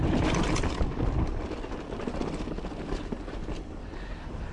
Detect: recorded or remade recorded